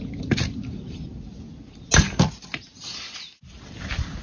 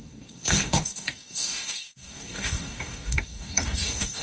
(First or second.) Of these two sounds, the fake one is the second